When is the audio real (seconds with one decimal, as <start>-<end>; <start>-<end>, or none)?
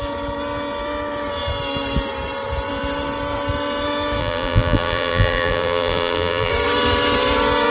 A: 0.0-4.2; 6.5-7.7